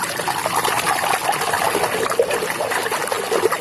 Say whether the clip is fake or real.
real